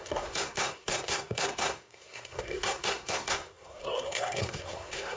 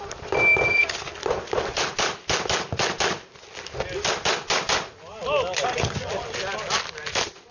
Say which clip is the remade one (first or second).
first